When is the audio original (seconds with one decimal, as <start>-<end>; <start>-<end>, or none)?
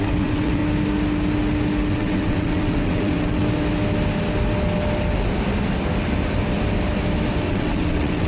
0.6-1.9; 3.4-7.5